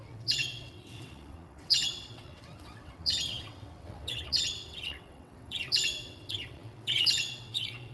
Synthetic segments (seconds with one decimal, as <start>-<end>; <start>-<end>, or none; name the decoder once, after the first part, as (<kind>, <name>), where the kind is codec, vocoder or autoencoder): 0.0-7.9 (vocoder, WaveNeXt)